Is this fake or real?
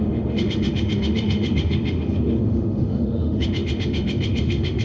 fake